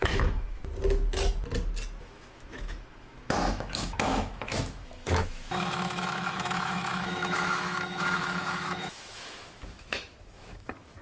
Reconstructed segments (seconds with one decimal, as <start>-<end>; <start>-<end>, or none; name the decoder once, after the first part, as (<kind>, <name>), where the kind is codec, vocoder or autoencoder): 0.0-0.6 (autoencoder, DAC-VAE); 2.0-11.0